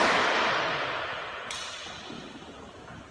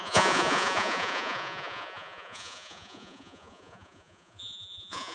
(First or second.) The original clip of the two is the first